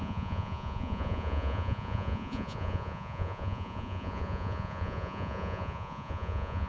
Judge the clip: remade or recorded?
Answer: remade